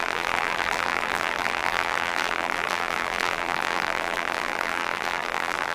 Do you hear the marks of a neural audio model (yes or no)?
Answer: yes